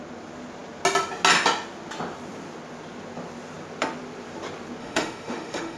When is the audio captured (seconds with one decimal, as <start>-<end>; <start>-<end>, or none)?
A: 0.0-4.8